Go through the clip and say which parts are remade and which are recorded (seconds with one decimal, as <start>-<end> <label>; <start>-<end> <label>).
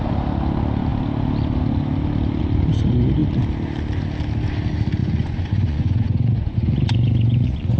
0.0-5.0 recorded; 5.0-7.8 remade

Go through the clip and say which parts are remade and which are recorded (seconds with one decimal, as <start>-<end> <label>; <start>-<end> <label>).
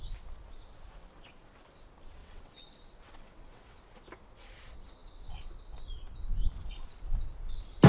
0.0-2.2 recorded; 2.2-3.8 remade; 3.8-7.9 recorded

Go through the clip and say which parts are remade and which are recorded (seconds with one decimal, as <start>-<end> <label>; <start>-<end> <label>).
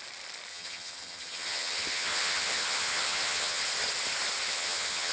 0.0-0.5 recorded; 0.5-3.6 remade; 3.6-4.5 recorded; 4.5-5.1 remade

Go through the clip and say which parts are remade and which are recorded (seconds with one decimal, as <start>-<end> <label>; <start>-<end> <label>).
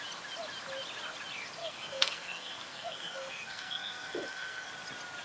0.0-1.6 recorded; 1.6-4.7 remade; 4.7-5.2 recorded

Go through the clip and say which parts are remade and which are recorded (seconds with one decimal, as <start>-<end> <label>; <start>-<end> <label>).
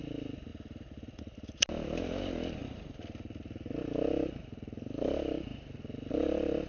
0.0-0.5 recorded; 0.5-1.2 remade; 1.2-2.6 recorded; 2.6-3.4 remade; 3.4-6.7 recorded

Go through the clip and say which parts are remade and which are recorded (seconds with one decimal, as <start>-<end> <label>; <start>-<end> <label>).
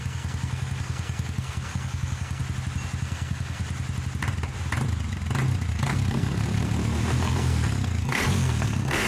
0.0-2.4 remade; 2.4-3.0 recorded; 3.0-3.6 remade; 3.6-5.7 recorded; 5.7-9.1 remade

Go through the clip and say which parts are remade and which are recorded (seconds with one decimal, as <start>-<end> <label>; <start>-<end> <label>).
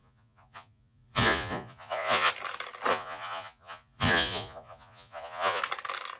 0.0-2.3 remade; 2.3-2.9 recorded; 2.9-5.6 remade; 5.6-6.2 recorded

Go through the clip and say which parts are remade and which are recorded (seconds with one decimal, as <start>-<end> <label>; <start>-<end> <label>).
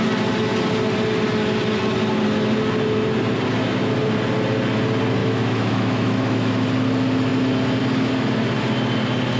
0.0-5.2 recorded; 5.2-6.5 remade; 6.5-9.4 recorded